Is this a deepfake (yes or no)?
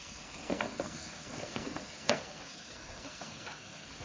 yes